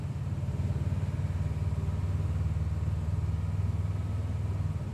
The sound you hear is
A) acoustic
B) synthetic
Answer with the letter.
A